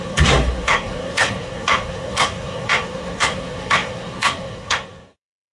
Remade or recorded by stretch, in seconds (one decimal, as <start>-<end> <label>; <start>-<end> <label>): 0.0-5.5 remade